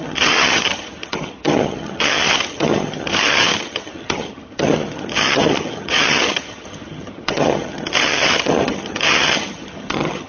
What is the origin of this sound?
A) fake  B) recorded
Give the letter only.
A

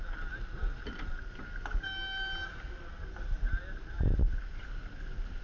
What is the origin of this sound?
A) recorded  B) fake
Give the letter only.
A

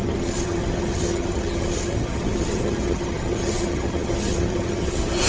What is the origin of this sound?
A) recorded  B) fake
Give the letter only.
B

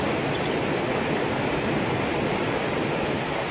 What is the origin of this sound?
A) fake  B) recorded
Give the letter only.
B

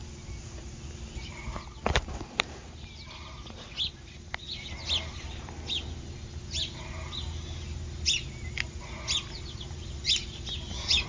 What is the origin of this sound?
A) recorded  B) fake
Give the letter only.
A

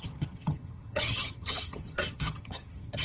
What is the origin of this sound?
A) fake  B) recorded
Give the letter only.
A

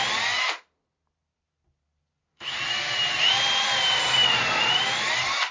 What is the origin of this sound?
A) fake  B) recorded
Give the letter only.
B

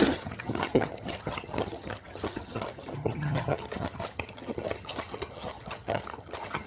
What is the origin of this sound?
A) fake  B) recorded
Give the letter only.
A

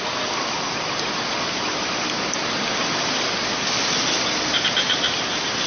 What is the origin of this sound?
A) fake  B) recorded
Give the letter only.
B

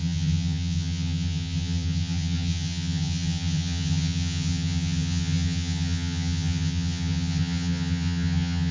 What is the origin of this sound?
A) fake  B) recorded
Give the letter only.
A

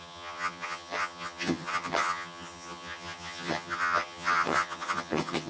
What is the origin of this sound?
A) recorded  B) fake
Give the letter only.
B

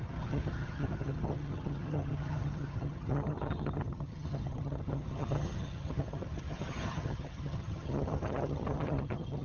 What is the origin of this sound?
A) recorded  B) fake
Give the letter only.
B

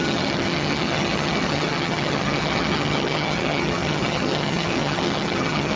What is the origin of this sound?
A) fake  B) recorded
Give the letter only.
A